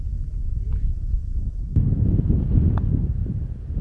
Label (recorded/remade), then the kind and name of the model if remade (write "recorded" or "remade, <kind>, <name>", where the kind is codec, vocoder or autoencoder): recorded